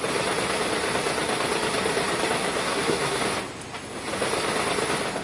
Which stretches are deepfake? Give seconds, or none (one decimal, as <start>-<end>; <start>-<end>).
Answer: 2.4-3.2